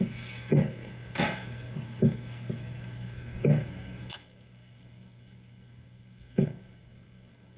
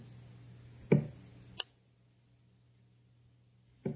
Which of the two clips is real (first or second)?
second